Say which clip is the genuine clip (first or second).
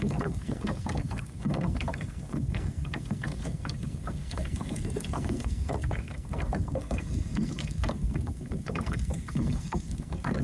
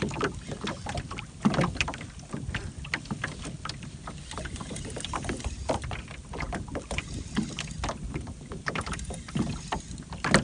second